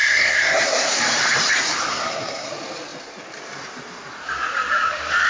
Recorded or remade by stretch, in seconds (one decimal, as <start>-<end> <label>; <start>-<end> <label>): 0.0-1.0 remade; 1.0-1.9 recorded; 1.9-2.5 remade; 2.5-5.3 recorded

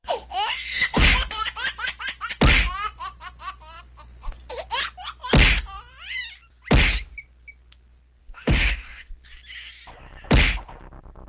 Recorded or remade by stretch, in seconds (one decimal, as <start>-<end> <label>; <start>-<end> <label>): 0.0-1.0 remade; 1.0-8.2 recorded; 8.2-9.1 remade; 9.1-11.3 recorded

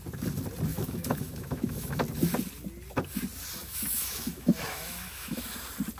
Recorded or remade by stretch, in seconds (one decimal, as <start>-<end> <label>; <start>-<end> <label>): 0.0-0.7 recorded; 0.7-2.0 remade; 2.0-3.6 recorded; 3.6-5.6 remade; 5.6-6.0 recorded

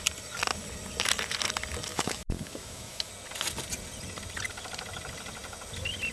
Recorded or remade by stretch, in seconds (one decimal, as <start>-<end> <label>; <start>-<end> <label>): 0.0-1.9 recorded; 1.9-3.1 remade; 3.1-6.1 recorded

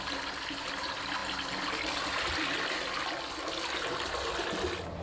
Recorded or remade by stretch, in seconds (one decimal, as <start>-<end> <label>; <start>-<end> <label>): 0.0-5.0 recorded

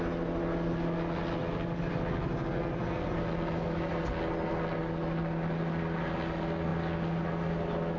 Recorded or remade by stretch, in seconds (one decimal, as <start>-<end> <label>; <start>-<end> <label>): 0.0-8.0 recorded

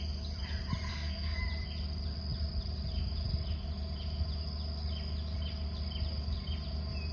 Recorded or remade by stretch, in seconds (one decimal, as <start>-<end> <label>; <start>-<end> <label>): 0.0-0.9 recorded; 0.9-1.4 remade; 1.4-7.1 recorded